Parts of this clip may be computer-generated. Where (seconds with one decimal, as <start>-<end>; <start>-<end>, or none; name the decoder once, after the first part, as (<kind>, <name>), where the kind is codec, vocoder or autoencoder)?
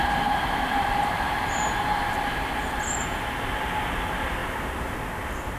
0.0-1.4 (vocoder, BigVGAN v2)